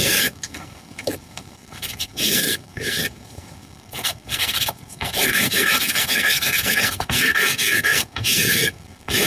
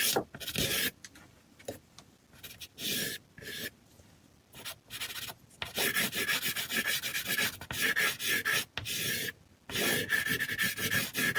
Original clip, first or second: second